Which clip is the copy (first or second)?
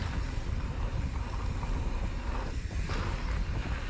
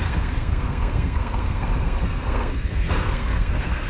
second